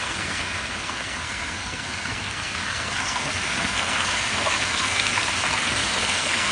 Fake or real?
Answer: fake